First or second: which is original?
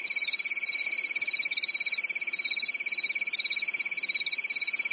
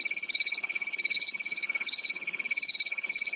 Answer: first